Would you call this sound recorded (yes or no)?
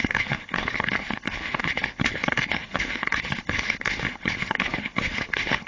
no